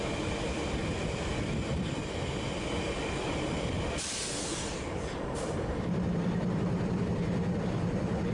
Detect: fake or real fake